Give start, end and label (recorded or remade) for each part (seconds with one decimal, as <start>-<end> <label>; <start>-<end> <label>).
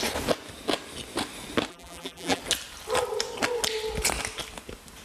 0.0-1.7 recorded; 1.7-2.4 remade; 2.4-5.0 recorded